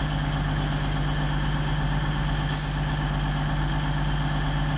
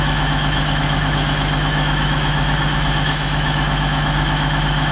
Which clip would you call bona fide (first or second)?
first